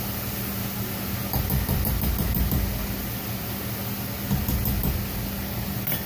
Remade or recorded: recorded